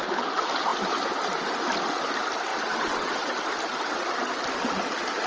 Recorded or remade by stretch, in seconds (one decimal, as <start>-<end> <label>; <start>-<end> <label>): 0.0-2.5 recorded; 2.5-3.2 remade; 3.2-5.3 recorded

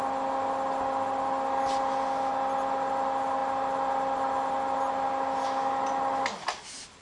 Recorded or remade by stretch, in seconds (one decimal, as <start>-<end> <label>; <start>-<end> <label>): 0.0-7.0 recorded